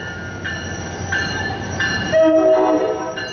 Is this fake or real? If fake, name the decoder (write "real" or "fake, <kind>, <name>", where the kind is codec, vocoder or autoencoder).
fake, vocoder, BigVGAN v2